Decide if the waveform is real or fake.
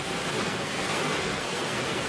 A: fake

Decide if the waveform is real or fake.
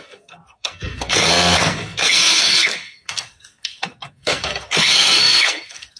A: fake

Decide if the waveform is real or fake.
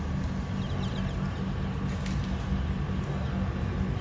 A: real